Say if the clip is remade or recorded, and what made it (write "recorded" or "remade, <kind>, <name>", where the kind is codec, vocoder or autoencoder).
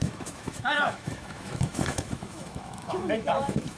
remade, autoencoder, DAC-VAE